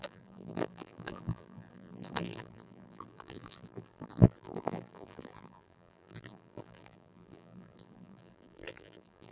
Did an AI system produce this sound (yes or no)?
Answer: yes